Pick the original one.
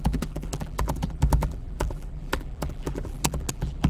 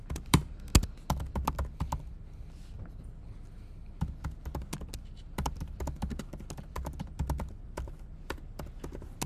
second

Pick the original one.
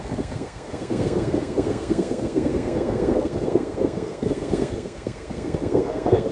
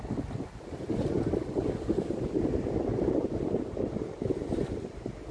second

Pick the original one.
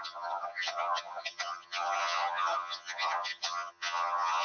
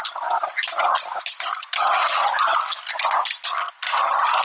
second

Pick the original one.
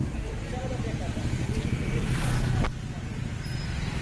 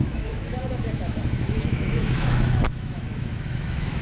first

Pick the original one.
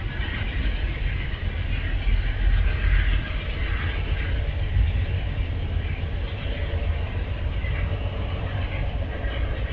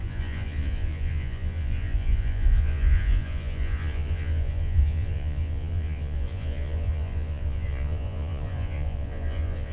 first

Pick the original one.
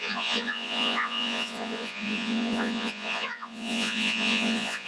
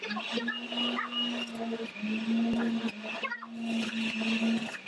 second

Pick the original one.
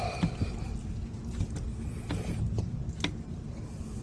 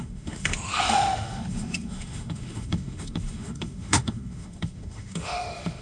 first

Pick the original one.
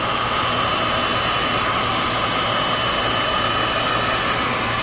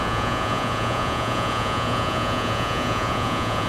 first